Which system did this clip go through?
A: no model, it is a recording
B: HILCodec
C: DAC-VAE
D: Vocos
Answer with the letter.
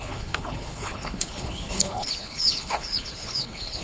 B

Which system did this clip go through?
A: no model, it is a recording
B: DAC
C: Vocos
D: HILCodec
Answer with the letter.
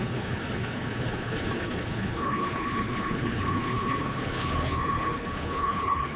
D